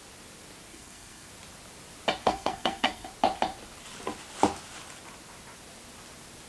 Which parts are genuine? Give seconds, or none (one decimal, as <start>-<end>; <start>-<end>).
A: 0.0-0.7; 1.3-2.2; 3.1-6.5